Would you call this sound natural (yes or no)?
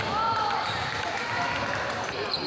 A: yes